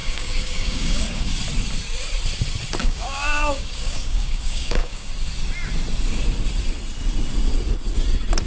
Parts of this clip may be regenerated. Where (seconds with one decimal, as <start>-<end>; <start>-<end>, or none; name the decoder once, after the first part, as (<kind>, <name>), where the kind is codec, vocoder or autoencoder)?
0.0-1.3 (codec, DAC); 2.8-5.1